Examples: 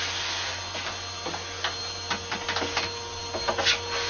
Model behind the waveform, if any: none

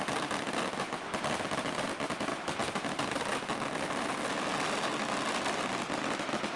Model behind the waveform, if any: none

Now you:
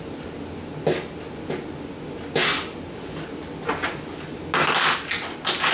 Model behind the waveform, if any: none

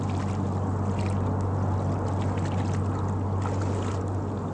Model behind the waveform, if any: none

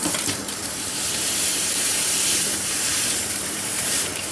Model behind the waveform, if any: vocoder, BigVGAN v2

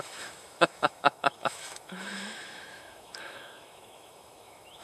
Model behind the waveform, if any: autoencoder, DAC-VAE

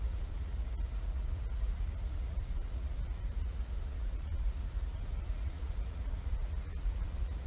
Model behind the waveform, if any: vocoder, Vocos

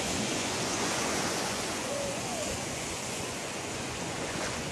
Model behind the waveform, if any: vocoder, Vocos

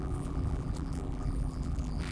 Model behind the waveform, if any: vocoder, BigVGAN v2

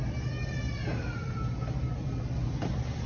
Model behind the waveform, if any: none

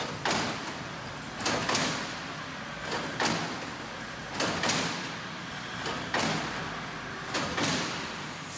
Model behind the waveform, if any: none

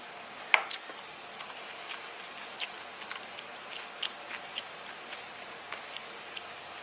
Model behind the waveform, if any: none